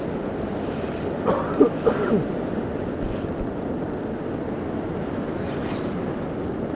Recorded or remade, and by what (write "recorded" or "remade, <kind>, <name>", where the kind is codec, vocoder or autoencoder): recorded